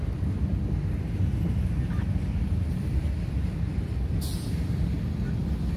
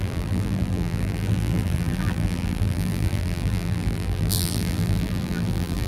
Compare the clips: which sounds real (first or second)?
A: first